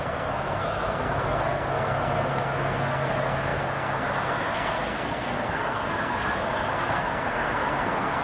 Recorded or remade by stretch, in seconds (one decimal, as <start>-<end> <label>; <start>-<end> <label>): 0.0-8.2 remade